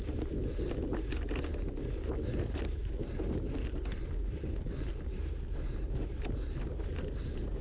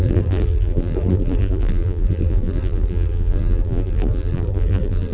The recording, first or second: first